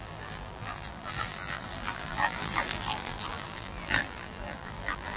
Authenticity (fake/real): fake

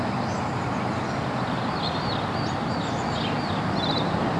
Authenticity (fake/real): real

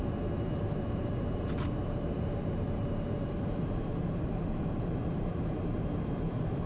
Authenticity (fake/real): fake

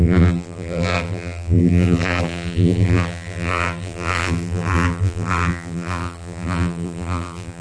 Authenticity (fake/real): fake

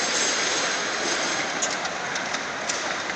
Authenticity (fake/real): real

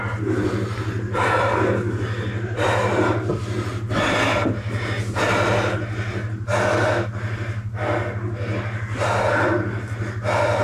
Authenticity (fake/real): real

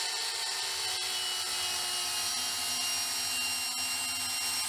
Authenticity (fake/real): real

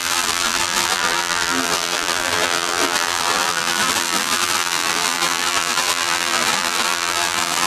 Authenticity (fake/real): fake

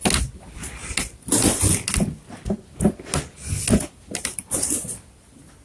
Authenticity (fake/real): real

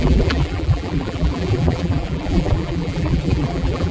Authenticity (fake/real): fake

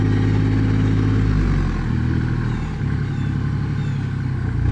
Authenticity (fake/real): real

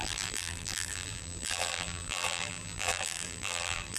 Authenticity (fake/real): fake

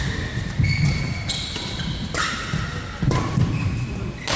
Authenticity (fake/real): real